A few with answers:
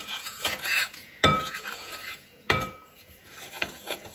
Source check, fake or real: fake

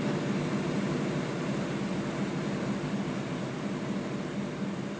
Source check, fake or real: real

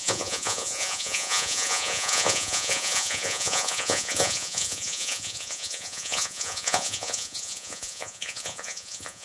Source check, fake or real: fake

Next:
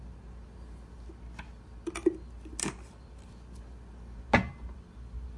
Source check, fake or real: real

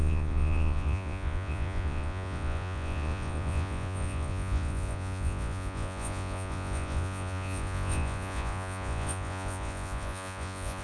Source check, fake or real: fake